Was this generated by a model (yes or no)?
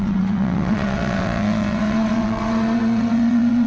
yes